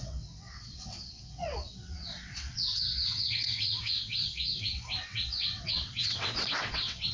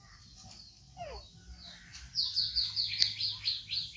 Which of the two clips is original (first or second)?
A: second